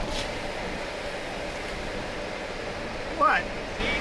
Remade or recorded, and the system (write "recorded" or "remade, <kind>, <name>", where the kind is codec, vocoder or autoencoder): recorded